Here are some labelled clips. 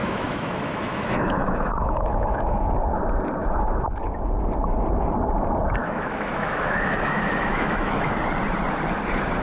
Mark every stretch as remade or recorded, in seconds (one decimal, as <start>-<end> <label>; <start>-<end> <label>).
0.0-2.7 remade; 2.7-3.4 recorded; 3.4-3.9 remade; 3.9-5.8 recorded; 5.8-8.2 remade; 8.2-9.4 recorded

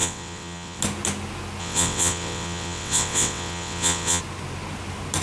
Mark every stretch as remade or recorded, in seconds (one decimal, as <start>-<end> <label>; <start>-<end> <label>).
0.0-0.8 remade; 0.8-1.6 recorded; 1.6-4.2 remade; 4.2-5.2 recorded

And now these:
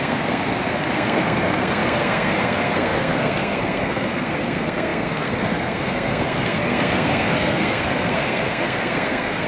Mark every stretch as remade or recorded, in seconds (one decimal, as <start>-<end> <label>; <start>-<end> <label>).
0.0-9.5 remade

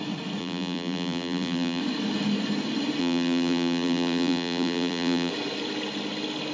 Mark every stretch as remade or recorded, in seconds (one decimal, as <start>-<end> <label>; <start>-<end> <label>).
0.0-0.4 recorded; 0.4-1.8 remade; 1.8-3.0 recorded; 3.0-5.3 remade; 5.3-6.5 recorded

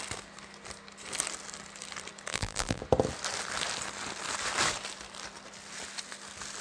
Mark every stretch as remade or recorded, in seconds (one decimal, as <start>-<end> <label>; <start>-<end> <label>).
0.0-2.3 recorded; 2.3-2.8 remade; 2.8-6.6 recorded